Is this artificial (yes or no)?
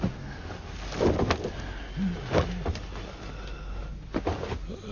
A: no